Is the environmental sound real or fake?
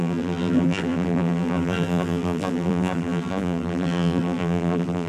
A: fake